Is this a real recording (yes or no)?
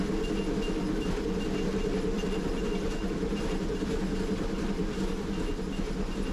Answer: yes